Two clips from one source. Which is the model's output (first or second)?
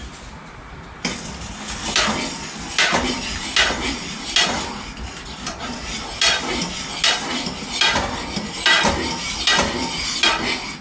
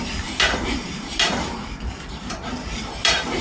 second